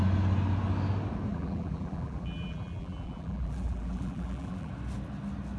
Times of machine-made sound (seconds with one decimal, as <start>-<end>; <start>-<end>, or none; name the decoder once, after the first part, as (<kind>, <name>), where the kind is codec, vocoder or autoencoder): 1.3-4.7 (vocoder, BigVGAN v2)